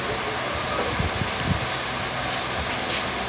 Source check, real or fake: real